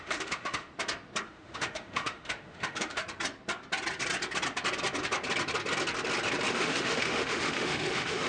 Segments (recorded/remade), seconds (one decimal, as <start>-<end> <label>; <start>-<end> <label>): 0.0-0.7 remade; 0.7-1.3 recorded; 1.3-3.0 remade; 3.0-6.5 recorded; 6.5-8.3 remade